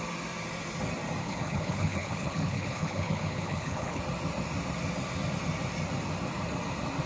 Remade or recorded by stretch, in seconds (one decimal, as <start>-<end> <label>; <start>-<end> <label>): 0.0-1.2 recorded; 1.2-4.0 remade; 4.0-7.1 recorded